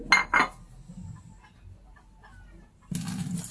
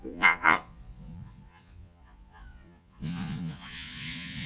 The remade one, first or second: second